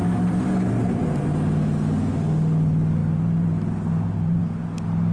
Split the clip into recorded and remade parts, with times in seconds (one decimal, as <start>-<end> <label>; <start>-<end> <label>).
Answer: 0.0-3.0 recorded; 3.0-4.4 remade; 4.4-5.1 recorded